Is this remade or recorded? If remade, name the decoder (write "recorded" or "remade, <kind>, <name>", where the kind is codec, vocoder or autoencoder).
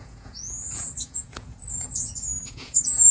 remade, vocoder, Vocos